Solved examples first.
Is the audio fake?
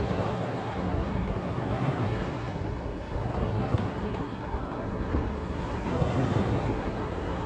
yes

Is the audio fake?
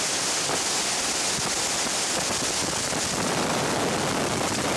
no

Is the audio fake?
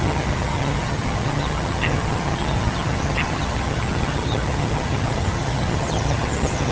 yes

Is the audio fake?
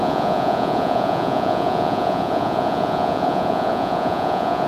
yes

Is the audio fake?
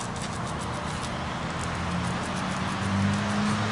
no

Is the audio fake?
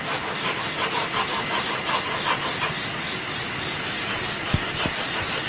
no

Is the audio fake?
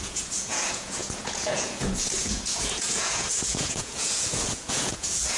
yes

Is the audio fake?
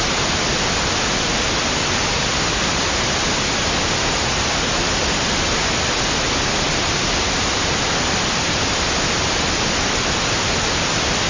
no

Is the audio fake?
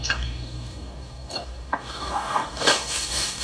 yes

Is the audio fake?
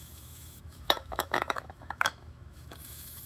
yes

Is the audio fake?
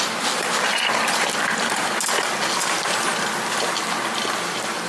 no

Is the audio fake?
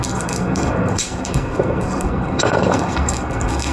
yes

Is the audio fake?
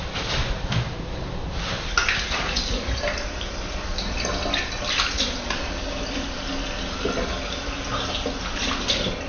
no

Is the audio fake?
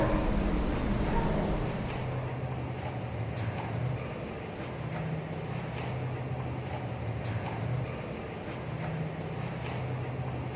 no